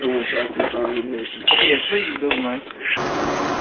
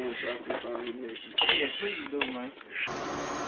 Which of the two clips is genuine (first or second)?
second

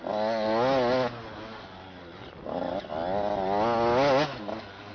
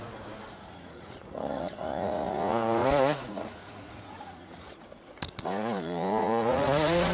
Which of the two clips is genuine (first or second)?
first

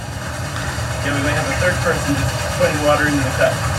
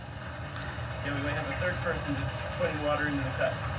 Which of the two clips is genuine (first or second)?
second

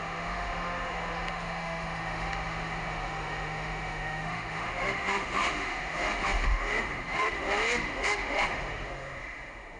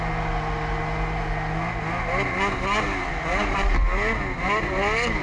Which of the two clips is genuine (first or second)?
second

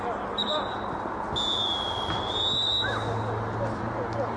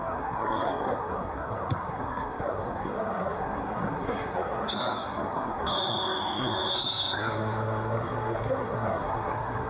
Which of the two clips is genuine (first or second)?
first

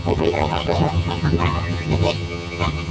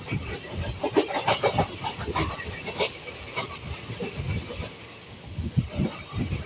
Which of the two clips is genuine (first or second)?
second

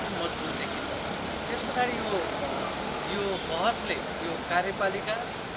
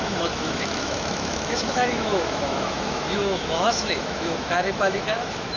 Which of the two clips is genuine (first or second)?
first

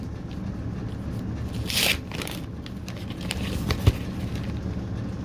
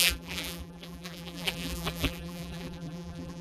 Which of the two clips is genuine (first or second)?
first